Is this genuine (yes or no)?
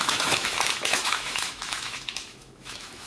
no